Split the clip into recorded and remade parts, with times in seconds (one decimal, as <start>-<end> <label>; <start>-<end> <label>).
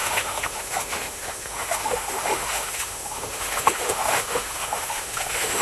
0.0-5.6 remade